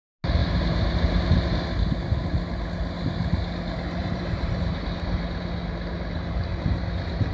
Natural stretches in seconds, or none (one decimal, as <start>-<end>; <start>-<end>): 0.0-0.4; 1.3-4.0; 5.4-7.3